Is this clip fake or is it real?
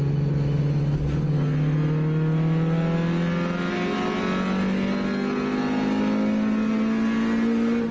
real